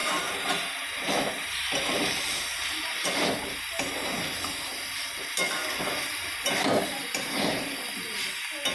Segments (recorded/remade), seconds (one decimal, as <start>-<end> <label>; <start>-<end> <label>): 0.0-4.2 remade; 4.2-7.0 recorded; 7.0-7.7 remade; 7.7-8.7 recorded